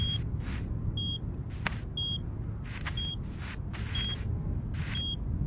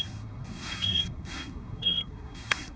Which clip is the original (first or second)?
first